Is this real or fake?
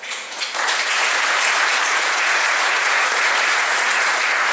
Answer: fake